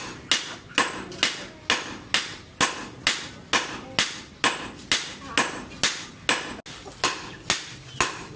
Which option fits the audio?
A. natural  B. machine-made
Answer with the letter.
A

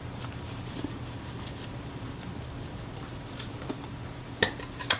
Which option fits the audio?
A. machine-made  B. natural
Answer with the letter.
A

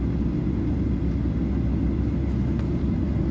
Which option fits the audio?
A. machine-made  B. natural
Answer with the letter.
B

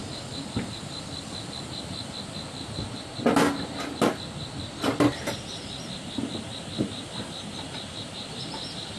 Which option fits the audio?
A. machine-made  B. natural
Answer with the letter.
B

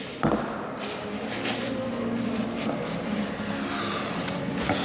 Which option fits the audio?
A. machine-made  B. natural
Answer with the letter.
B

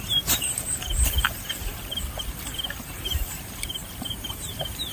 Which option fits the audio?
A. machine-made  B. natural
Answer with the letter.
A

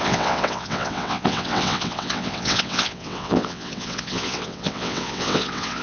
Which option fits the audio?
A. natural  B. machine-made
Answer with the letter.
B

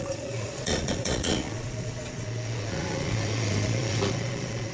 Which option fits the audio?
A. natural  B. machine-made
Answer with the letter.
B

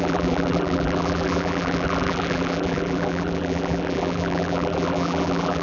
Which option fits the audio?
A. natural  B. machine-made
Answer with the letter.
B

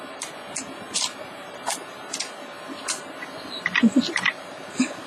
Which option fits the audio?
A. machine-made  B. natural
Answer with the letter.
B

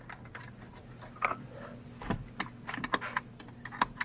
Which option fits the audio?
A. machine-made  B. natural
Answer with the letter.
B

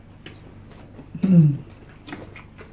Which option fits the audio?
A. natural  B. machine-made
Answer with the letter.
A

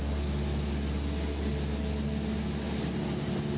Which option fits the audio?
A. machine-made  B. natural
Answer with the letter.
B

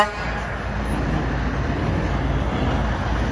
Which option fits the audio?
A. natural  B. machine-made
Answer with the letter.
A